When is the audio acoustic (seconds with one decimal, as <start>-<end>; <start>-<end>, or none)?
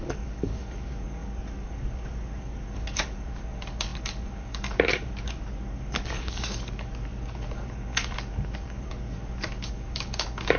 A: none